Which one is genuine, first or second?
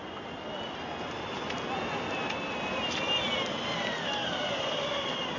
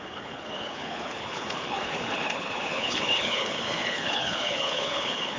first